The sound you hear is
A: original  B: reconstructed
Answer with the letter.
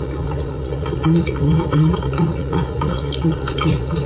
B